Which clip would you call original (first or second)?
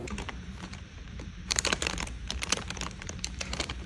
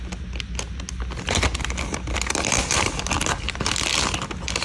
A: second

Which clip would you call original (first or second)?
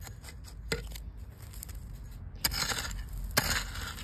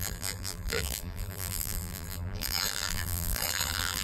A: first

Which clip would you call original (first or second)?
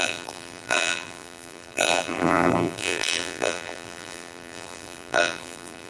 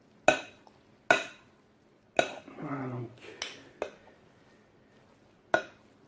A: second